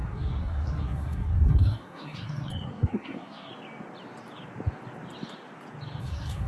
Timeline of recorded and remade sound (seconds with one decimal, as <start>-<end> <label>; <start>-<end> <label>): 0.0-3.5 remade; 3.5-6.0 recorded; 6.0-6.5 remade